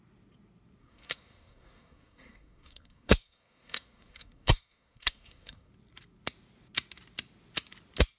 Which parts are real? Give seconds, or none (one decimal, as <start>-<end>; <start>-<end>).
0.0-0.8; 5.7-8.2